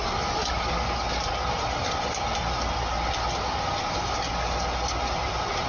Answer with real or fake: real